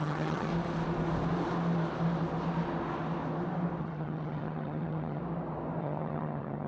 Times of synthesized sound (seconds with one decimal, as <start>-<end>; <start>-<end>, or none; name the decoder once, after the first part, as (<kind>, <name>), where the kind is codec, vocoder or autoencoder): 0.0-0.5 (vocoder, HiFi-GAN); 3.8-5.2; 5.8-6.7